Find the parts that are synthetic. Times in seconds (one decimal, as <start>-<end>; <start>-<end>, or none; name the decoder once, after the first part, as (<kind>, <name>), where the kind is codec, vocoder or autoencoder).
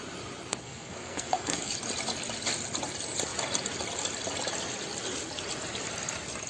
0.6-1.7 (codec, SNAC)